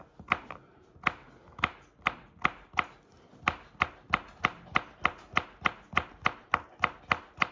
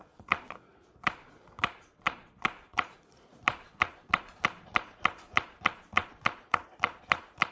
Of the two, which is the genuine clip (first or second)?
first